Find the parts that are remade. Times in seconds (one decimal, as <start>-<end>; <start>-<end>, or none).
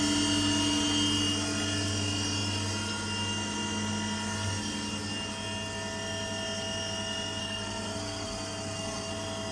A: 7.4-9.1